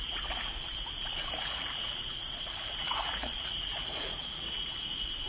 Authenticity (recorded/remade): remade